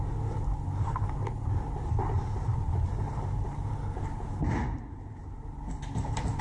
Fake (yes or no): no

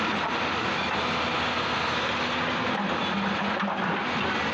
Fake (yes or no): no